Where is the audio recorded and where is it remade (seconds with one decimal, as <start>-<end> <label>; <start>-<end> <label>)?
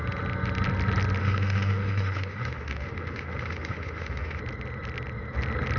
0.0-1.2 recorded; 1.2-4.4 remade; 4.4-5.8 recorded